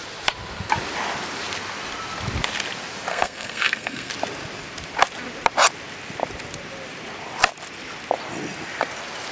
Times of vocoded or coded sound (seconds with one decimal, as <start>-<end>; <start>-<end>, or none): 3.1-4.1